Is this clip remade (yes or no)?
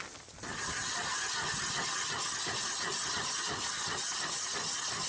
no